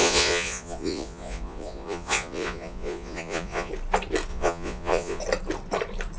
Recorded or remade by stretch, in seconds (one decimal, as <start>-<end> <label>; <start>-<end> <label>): 0.0-3.7 remade; 3.7-4.3 recorded; 4.3-5.2 remade; 5.2-6.2 recorded